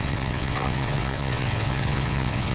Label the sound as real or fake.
fake